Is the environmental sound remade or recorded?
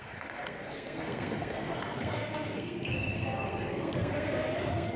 remade